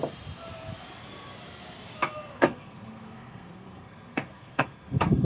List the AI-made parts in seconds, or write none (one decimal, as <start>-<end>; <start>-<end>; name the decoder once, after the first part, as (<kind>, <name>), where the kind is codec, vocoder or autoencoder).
2.4-5.2 (codec, SNAC)